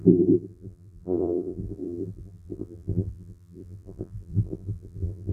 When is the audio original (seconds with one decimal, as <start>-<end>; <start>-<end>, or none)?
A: none